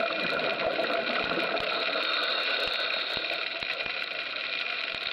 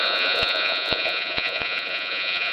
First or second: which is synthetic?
second